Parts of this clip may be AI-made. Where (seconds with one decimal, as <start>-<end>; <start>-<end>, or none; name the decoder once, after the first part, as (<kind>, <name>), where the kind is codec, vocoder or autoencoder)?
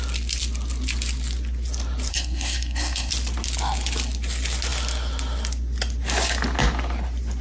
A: 2.1-3.1 (codec, SNAC)